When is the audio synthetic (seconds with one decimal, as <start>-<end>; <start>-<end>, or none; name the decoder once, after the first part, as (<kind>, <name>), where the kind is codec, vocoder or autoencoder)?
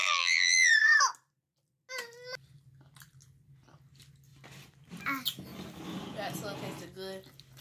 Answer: 0.0-0.7 (vocoder, BigVGAN v2)